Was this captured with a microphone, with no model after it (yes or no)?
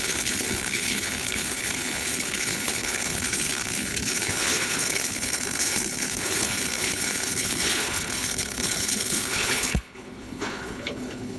no